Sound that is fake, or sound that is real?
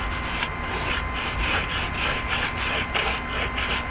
real